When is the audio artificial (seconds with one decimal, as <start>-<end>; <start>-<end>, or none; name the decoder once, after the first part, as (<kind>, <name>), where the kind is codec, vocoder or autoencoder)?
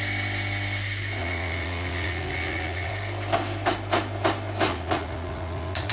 1.2-2.9 (vocoder, Vocos); 4.7-5.9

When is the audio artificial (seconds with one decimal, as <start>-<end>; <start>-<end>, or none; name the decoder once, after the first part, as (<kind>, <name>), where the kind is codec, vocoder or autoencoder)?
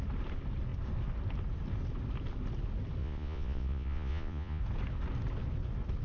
3.0-4.6 (vocoder, Vocos)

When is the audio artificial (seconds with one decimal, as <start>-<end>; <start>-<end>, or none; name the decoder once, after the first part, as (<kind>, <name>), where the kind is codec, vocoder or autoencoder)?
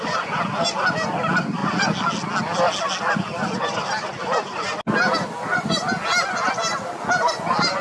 none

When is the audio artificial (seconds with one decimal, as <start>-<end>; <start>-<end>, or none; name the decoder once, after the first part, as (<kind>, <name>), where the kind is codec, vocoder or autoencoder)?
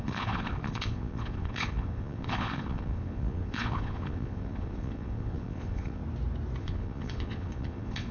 0.0-6.0 (vocoder, Vocos); 6.6-8.1